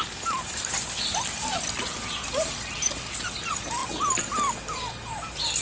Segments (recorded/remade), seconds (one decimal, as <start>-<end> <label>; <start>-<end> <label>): 0.0-5.6 recorded